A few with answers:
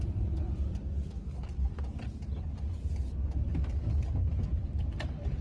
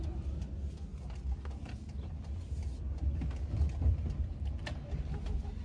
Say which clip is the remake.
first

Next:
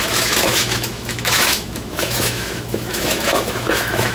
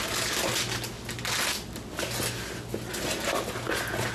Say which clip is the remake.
first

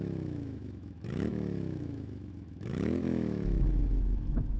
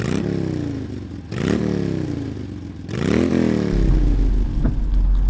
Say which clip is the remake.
first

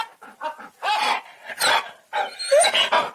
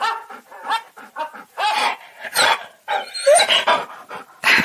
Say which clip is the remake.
second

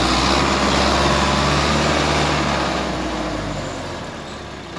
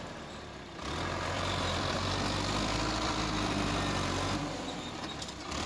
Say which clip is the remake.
second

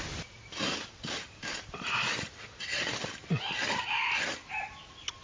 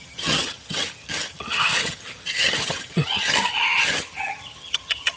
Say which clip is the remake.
second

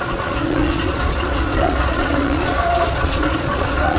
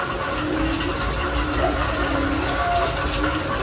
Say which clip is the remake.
first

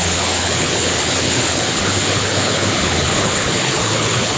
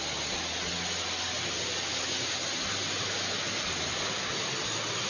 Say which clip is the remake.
first